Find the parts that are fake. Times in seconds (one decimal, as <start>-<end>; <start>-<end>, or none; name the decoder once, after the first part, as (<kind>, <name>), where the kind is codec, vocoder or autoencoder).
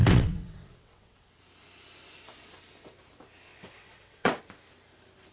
0.0-1.4 (vocoder, WaveNeXt); 3.5-4.4